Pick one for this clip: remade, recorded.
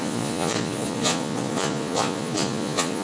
remade